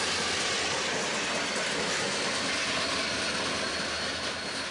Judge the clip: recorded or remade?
recorded